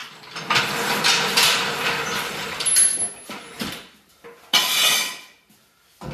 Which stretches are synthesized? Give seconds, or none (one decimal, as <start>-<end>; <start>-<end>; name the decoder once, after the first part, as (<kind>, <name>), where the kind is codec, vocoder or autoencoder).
none